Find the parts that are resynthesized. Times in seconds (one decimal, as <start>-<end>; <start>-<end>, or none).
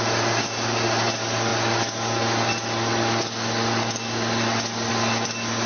none